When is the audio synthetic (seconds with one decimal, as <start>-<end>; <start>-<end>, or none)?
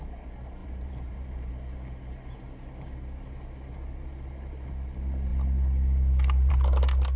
0.6-1.5